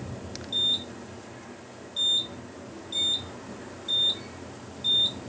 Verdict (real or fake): real